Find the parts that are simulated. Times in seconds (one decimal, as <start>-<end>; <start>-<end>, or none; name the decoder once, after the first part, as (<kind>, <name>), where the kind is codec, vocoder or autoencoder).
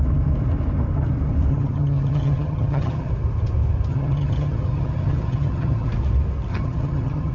1.5-3.1 (vocoder, HiFi-GAN); 3.9-5.9; 6.5-7.3